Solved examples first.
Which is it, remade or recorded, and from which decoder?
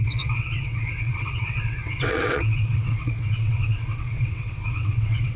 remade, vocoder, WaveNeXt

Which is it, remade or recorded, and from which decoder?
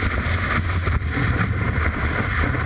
recorded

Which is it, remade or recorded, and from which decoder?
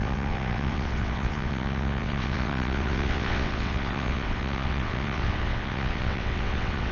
remade, vocoder, WaveNeXt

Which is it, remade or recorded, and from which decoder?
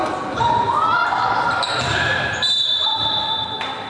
recorded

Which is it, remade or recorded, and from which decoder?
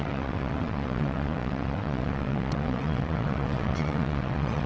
remade, vocoder, WaveNeXt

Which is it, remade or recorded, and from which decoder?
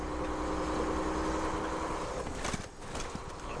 recorded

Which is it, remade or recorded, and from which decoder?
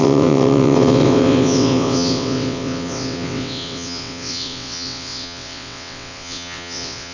remade, vocoder, WaveNeXt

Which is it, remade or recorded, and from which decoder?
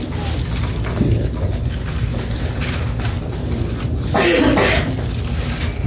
recorded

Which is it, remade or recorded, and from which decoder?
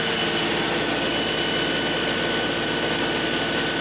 recorded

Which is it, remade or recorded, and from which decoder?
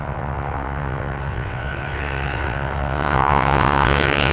remade, vocoder, WaveNeXt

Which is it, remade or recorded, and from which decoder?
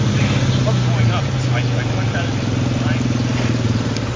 recorded